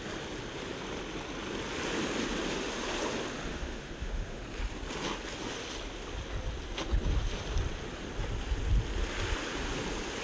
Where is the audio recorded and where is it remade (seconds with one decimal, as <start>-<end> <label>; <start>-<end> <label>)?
0.0-3.5 recorded; 3.5-4.4 remade; 4.4-10.2 recorded